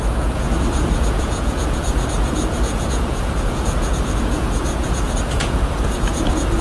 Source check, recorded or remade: remade